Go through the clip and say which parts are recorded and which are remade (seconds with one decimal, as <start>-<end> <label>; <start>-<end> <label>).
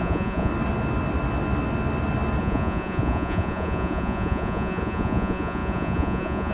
0.0-0.5 remade; 0.5-2.4 recorded; 2.4-6.5 remade